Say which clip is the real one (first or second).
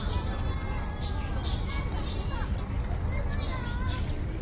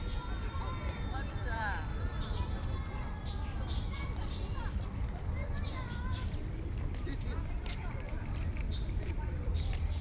first